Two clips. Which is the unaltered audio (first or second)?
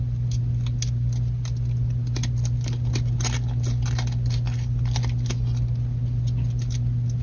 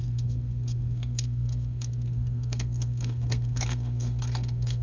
first